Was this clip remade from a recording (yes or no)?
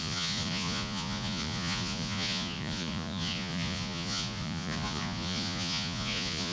yes